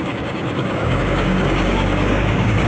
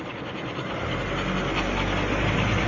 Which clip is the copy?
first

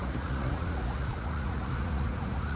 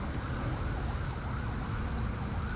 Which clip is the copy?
first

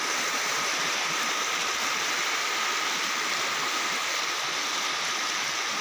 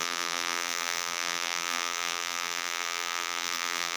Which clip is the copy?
second